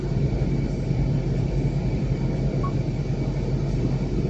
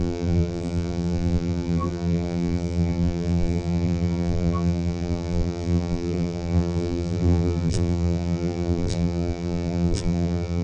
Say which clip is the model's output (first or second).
second